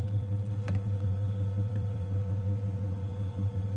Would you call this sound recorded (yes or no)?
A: no